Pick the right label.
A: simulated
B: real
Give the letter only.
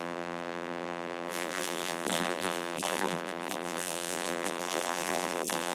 A